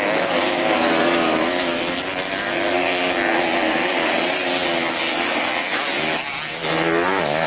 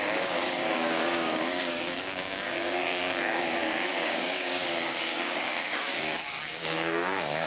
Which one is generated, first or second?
second